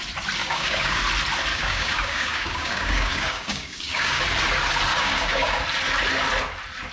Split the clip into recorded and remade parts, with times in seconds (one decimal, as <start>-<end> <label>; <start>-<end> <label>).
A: 0.0-0.4 recorded; 0.4-1.0 remade; 1.0-1.5 recorded; 1.5-4.2 remade; 4.2-4.9 recorded; 4.9-5.6 remade; 5.6-6.9 recorded